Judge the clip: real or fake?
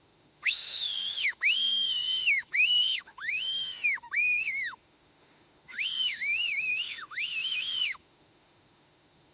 fake